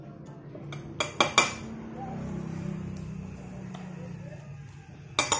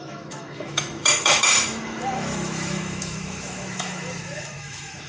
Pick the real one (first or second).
first